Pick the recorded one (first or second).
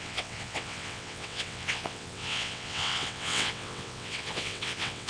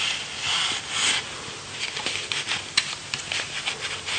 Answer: second